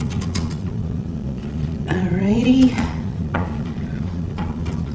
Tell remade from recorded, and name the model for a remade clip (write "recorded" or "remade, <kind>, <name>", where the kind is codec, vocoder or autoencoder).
remade, vocoder, Vocos